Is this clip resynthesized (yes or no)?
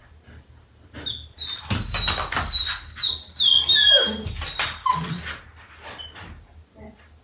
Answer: no